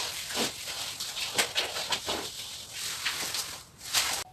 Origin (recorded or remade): remade